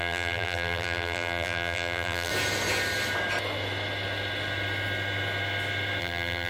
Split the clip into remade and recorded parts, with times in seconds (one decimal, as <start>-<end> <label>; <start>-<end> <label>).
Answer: 0.0-2.3 remade; 2.3-6.0 recorded; 6.0-6.5 remade